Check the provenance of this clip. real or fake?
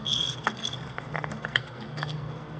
fake